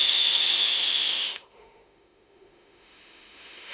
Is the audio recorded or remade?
remade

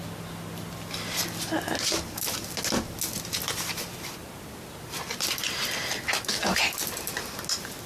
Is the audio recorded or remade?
recorded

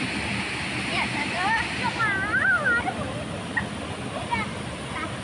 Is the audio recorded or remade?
recorded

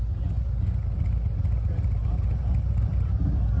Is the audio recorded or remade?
recorded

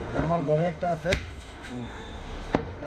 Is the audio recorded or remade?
remade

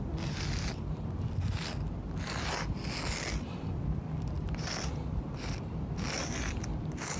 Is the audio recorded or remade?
recorded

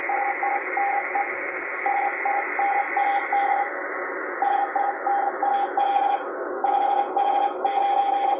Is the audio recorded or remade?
recorded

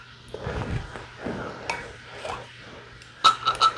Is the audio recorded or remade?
recorded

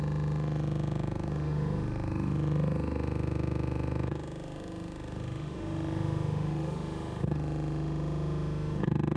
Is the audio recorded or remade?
remade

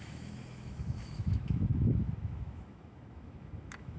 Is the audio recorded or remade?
remade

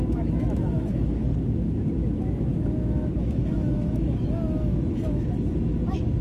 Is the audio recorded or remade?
remade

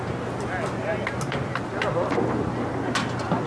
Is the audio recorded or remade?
recorded